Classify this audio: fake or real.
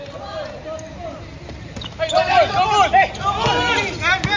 real